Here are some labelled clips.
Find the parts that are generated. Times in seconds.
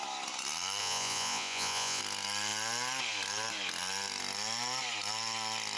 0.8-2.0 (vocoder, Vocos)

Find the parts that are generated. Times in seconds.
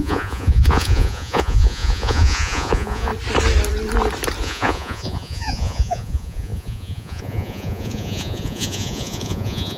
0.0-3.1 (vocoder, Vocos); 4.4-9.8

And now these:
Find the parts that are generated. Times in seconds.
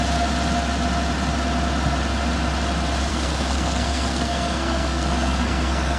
3.1-6.0 (codec, SNAC)